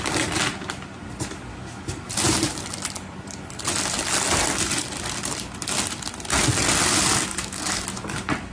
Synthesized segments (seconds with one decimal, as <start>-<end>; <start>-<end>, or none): 1.5-2.1; 7.3-7.8